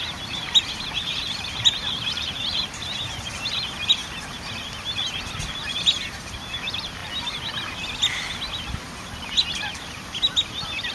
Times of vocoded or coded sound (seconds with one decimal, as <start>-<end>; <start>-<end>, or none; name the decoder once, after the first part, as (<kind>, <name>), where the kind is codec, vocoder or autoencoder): 0.0-4.0 (vocoder, BigVGAN v2); 5.6-7.0; 8.7-10.9

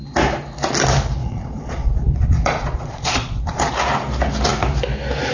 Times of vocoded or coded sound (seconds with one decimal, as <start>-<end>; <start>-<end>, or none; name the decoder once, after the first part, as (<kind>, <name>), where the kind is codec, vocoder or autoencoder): 1.2-3.7 (vocoder, Vocos)

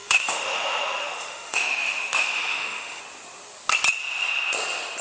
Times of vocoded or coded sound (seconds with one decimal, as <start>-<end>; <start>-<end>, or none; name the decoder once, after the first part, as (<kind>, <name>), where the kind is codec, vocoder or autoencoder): 0.0-3.0 (autoencoder, DAC-VAE)

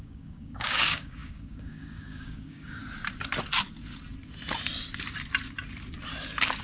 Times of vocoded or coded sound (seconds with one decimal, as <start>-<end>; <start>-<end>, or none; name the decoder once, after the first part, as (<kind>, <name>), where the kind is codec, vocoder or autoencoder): 0.0-2.8 (codec, DAC)

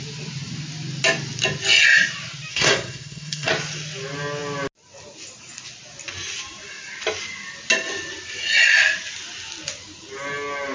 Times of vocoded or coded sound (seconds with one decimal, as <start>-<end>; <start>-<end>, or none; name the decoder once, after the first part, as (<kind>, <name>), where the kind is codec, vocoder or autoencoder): 2.5-3.5 (codec, SNAC)

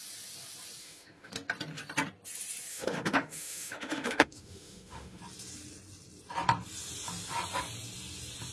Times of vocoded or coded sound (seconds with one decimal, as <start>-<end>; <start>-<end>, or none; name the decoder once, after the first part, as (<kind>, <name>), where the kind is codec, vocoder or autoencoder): 0.8-1.3 (autoencoder, DAC-VAE); 2.7-5.2